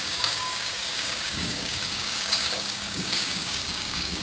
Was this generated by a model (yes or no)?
yes